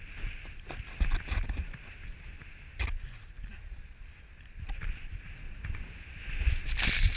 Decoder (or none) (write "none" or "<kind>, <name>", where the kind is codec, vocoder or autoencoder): none